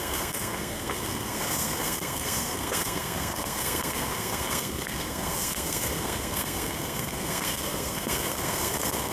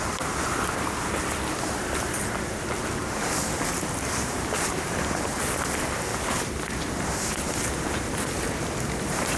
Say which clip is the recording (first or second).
second